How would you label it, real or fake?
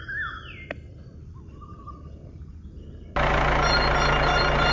real